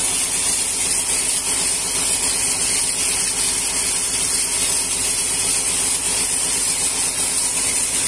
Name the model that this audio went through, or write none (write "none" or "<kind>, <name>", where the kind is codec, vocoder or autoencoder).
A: none